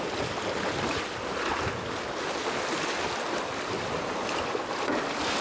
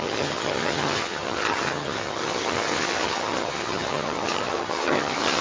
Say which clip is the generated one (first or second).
second